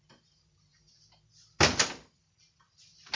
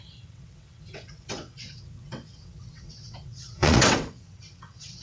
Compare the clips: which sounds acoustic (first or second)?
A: first